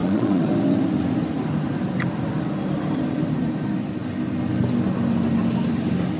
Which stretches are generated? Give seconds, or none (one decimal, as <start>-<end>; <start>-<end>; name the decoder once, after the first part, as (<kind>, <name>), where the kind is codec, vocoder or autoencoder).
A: 0.0-0.5 (vocoder, Vocos)